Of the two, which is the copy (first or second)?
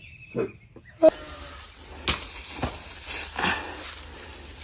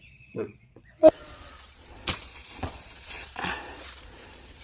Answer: second